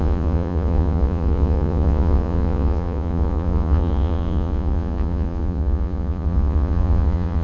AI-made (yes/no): yes